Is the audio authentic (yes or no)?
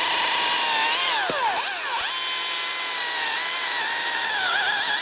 yes